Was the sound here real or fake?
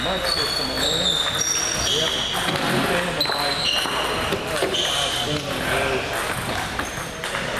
real